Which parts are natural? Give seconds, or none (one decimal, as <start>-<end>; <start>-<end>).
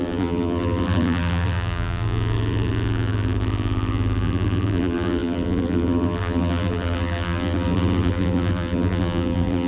none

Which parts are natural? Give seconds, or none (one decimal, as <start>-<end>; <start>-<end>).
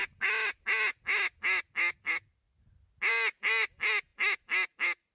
0.0-5.1